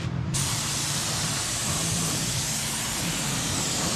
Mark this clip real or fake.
fake